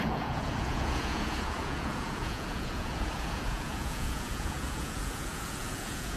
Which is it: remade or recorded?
remade